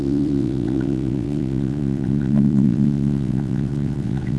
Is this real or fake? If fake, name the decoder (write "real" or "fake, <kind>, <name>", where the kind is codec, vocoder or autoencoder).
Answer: fake, vocoder, WaveNeXt